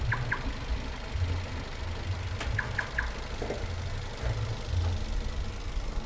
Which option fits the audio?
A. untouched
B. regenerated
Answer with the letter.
A